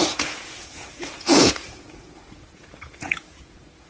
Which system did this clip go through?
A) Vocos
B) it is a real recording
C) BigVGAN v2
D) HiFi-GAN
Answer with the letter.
A